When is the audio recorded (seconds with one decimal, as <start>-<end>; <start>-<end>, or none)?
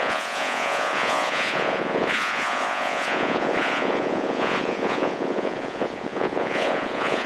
none